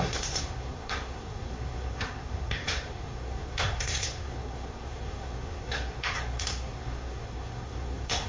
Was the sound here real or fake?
fake